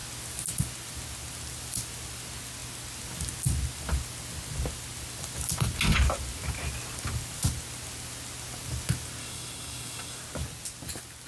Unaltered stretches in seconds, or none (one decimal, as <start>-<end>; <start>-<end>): 0.0-9.2; 10.2-11.3